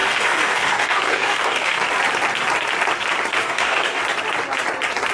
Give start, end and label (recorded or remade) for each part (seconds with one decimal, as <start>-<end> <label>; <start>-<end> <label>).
0.0-1.9 remade; 1.9-3.4 recorded; 3.4-4.0 remade; 4.0-5.1 recorded